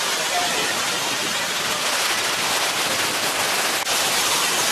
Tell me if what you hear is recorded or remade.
recorded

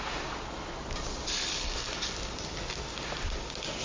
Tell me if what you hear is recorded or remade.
recorded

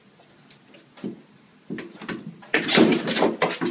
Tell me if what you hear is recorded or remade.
recorded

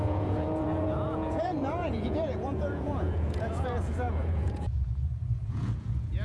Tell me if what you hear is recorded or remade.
remade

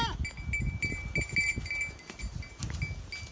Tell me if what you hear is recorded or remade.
recorded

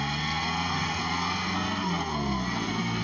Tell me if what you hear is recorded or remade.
remade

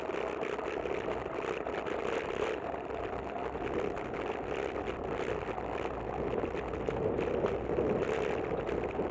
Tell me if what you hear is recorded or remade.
recorded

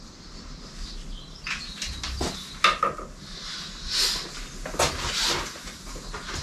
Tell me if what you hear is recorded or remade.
recorded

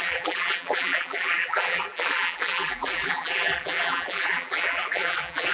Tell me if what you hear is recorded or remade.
remade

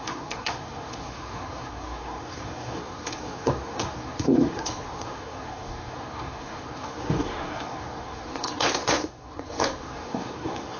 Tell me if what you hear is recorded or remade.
remade